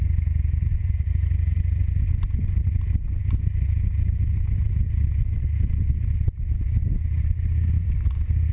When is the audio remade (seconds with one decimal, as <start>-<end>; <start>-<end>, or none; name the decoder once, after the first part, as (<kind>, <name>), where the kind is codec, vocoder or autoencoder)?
1.5-2.1 (vocoder, BigVGAN v2)